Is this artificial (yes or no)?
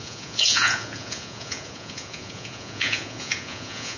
yes